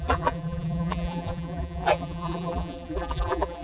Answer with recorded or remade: remade